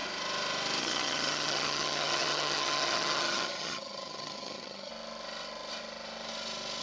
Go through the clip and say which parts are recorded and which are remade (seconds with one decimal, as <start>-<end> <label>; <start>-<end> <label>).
0.0-0.8 recorded; 0.8-4.9 remade; 4.9-6.8 recorded